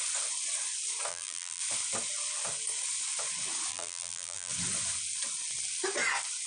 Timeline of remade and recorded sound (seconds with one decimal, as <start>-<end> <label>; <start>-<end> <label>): 0.0-1.1 recorded; 1.1-1.6 remade; 1.6-3.7 recorded; 3.7-4.5 remade; 4.5-6.5 recorded